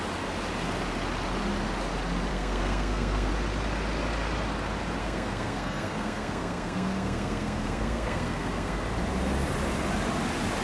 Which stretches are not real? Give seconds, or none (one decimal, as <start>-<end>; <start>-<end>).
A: 2.3-3.3; 5.0-8.8